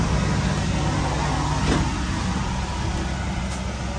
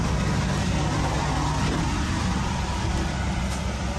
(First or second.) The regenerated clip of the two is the second